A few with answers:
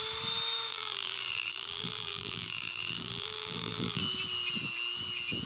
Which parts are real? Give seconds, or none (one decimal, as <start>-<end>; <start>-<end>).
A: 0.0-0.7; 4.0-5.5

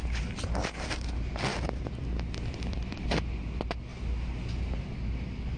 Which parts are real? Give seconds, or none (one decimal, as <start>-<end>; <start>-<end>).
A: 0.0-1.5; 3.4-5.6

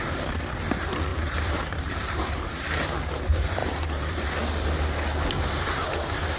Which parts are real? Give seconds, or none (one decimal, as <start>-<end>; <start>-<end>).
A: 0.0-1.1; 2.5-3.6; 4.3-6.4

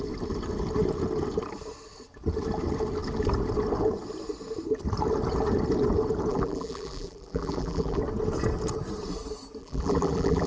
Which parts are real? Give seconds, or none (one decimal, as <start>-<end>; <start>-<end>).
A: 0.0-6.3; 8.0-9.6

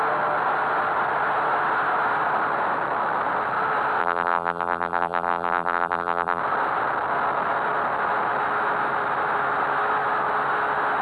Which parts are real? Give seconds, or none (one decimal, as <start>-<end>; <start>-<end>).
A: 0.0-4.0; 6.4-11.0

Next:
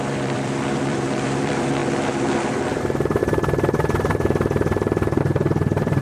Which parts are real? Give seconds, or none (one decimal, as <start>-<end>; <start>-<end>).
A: 1.8-2.8; 3.2-5.2

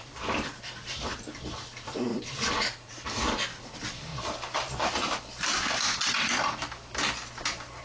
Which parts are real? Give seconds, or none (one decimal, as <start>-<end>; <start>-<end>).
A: 4.1-7.8

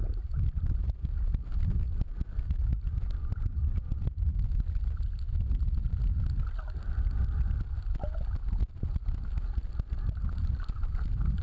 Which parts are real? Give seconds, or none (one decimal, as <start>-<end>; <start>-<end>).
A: 1.1-11.4